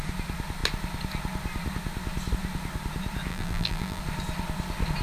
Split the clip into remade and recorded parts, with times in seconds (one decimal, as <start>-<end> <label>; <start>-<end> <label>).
0.0-3.3 recorded; 3.3-4.0 remade; 4.0-5.0 recorded